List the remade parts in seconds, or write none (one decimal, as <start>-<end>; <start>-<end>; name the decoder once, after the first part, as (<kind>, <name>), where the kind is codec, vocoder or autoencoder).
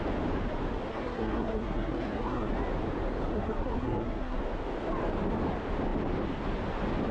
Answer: 0.9-2.5 (codec, SNAC); 3.3-4.4